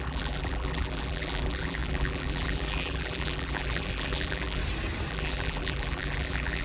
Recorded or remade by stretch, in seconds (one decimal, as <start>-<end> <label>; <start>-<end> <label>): 0.0-4.6 remade; 4.6-5.1 recorded; 5.1-6.6 remade